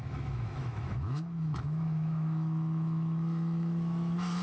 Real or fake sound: fake